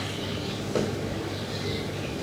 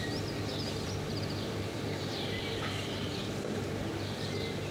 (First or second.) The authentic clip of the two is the second